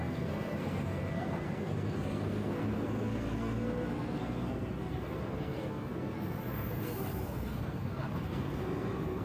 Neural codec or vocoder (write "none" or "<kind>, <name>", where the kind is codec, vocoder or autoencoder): codec, SNAC